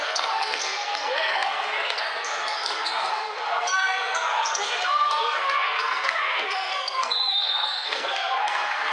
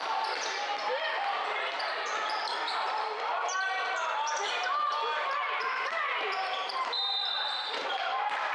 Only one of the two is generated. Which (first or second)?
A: first